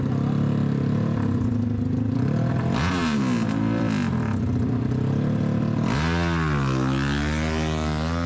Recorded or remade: recorded